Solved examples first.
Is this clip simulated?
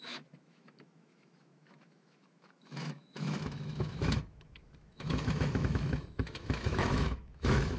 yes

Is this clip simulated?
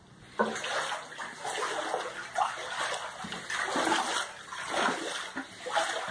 no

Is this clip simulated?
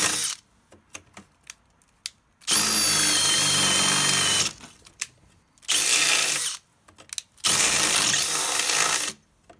no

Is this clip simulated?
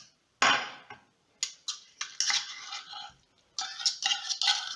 no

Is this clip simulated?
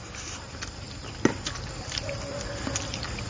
no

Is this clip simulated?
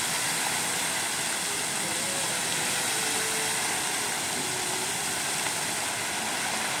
no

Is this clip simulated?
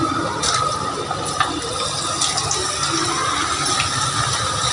no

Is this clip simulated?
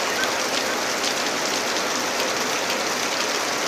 no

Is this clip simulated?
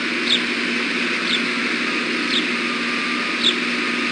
no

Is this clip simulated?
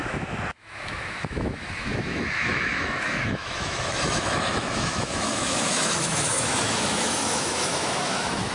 yes